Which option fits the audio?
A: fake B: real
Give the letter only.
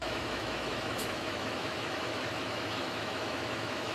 A